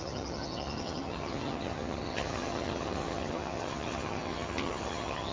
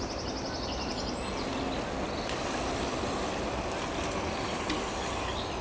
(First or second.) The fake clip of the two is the first